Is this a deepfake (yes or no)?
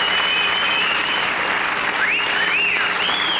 no